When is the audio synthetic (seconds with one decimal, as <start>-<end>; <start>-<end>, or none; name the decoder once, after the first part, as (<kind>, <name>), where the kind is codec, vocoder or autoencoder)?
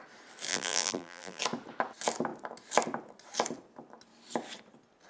0.5-1.4 (vocoder, BigVGAN v2)